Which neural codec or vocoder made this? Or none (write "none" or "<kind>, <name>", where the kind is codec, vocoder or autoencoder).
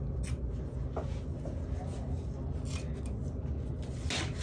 none